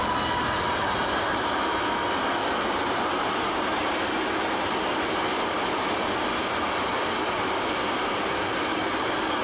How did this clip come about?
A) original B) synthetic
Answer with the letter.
A